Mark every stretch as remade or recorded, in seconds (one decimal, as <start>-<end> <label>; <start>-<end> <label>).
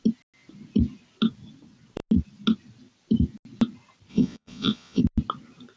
0.0-4.1 recorded; 4.1-5.0 remade; 5.0-5.8 recorded